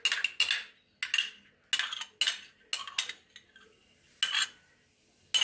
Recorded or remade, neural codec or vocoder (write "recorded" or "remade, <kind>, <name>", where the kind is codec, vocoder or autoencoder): recorded